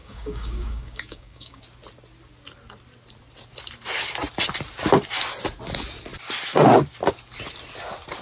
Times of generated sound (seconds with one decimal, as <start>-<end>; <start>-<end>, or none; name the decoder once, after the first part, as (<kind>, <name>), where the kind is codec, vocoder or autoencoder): 0.0-1.6 (codec, DAC)

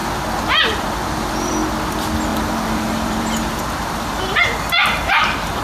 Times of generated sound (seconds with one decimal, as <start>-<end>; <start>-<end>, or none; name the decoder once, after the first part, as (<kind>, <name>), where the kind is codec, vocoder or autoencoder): 2.3-4.2 (vocoder, BigVGAN v2); 4.8-5.6

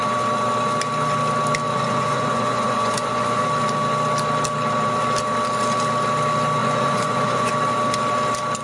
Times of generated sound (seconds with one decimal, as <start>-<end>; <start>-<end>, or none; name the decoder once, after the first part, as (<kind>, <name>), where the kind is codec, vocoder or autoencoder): 1.7-3.4 (vocoder, Vocos); 6.6-7.5

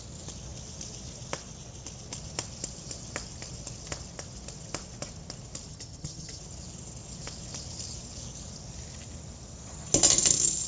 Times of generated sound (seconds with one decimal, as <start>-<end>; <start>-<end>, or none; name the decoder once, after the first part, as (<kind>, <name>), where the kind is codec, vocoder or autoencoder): 5.7-6.4 (vocoder, HiFi-GAN)

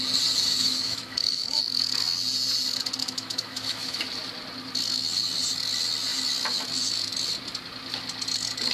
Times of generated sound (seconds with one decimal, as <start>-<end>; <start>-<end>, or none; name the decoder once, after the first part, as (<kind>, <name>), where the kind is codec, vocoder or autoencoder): 0.5-1.6 (autoencoder, DAC-VAE); 3.0-4.0

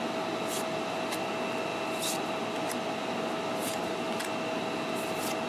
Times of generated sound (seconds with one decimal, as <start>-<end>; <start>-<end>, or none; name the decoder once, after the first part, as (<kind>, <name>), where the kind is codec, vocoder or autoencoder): 3.6-4.2 (vocoder, BigVGAN v2)

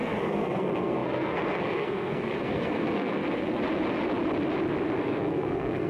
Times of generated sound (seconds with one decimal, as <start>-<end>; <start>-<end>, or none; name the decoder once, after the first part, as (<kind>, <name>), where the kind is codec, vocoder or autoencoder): 0.0-3.2 (codec, SNAC); 5.0-5.9

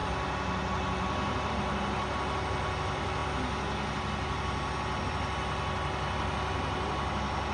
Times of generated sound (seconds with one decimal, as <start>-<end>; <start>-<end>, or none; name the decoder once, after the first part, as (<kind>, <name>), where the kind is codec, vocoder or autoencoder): none